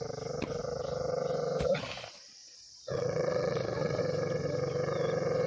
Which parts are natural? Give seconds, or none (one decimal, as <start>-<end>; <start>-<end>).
0.0-2.4; 4.0-5.5